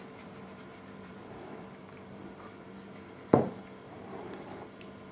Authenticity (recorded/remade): remade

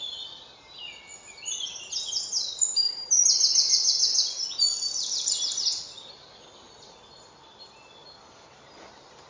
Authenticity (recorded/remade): recorded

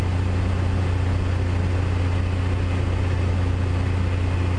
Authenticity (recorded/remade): recorded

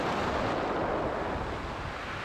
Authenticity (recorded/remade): recorded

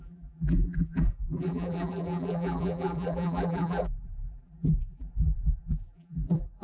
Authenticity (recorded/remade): remade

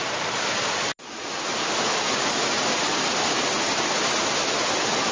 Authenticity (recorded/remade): recorded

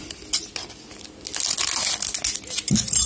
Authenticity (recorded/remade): recorded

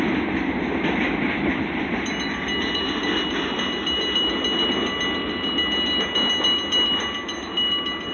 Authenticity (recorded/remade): recorded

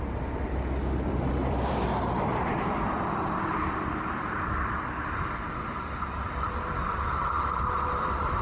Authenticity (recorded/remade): remade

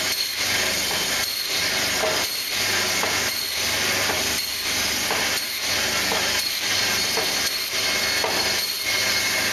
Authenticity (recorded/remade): remade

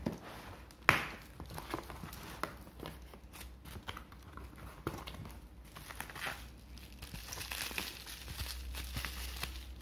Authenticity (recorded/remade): recorded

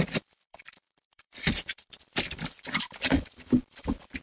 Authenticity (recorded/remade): remade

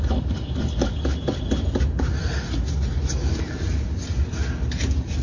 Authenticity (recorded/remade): recorded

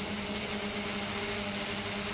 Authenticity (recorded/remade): recorded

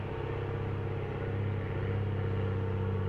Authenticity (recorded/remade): recorded